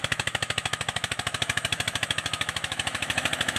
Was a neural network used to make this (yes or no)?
yes